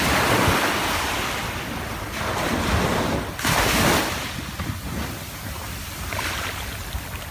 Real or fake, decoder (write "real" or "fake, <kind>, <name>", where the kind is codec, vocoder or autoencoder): real